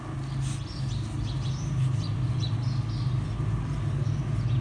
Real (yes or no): yes